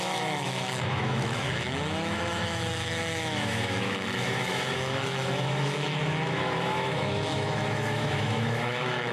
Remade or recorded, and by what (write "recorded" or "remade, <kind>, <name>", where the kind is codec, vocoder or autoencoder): remade, autoencoder, DAC-VAE